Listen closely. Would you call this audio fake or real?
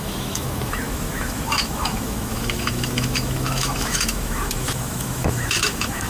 fake